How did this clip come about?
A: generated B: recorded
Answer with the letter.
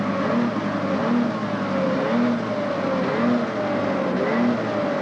B